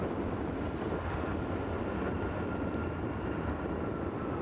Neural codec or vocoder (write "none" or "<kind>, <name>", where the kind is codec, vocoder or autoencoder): none